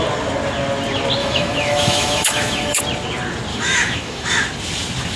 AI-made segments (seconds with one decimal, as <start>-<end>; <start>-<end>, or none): 1.2-2.8; 3.5-4.5